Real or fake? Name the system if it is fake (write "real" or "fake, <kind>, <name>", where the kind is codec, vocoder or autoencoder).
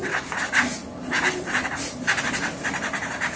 real